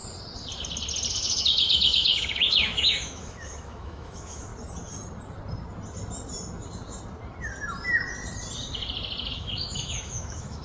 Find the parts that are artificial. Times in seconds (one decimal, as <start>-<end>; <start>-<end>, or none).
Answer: 1.1-4.5; 9.3-10.6